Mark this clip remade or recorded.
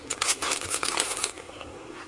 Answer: remade